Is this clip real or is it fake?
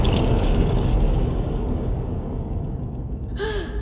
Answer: fake